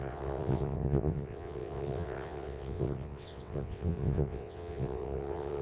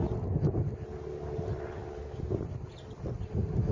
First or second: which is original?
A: second